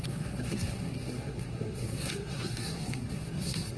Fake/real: fake